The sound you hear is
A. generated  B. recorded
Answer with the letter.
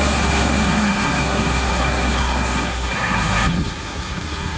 A